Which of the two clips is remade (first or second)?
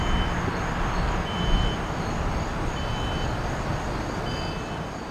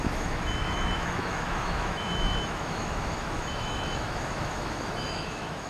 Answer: second